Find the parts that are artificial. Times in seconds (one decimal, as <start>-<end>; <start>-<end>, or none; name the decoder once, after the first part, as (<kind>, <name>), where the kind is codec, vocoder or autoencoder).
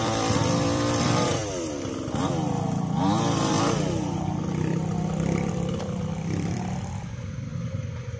0.0-1.4 (vocoder, BigVGAN v2); 5.5-7.5